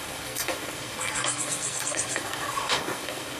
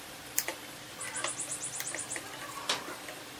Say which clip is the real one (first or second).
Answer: second